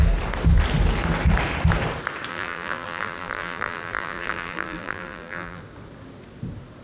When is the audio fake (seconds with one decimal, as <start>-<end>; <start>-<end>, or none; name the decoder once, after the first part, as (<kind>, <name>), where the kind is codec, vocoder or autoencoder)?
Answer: 2.3-5.6 (vocoder, BigVGAN v2)